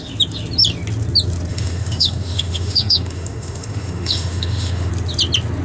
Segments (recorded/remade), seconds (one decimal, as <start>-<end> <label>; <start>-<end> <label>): 0.0-1.5 recorded; 1.5-4.9 remade; 4.9-5.6 recorded